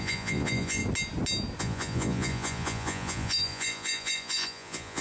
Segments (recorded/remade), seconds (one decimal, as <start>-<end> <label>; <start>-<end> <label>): 0.0-0.8 remade; 0.8-1.6 recorded; 1.6-5.0 remade